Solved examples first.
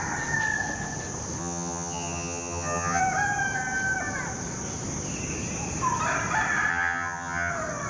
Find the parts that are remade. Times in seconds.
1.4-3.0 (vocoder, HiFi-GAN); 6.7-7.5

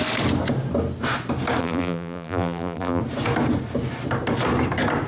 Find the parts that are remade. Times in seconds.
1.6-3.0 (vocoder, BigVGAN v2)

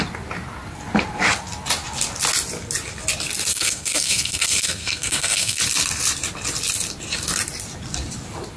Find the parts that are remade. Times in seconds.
3.5-5.6 (codec, SNAC)

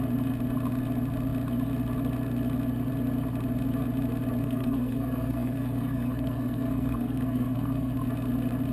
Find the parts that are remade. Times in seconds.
4.4-7.9 (codec, SNAC)